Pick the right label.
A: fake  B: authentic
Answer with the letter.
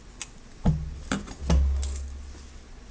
B